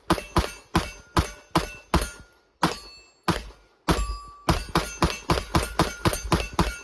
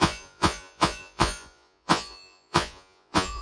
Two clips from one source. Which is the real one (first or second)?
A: first